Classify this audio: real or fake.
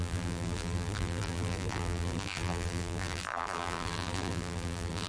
fake